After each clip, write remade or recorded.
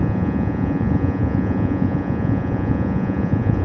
remade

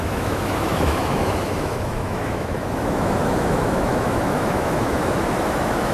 remade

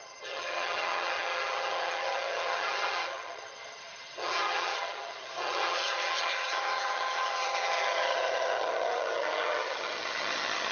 remade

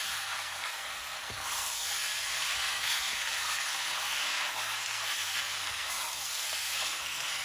remade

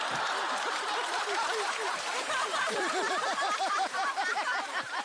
remade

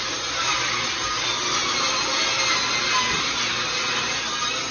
recorded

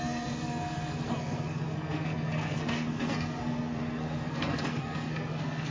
remade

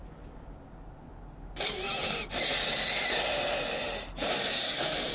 recorded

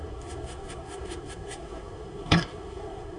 remade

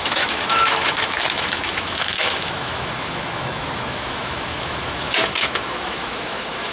remade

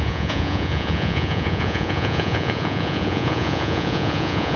remade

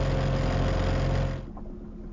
recorded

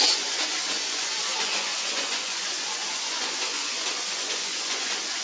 remade